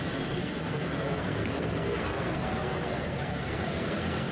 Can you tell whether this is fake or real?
fake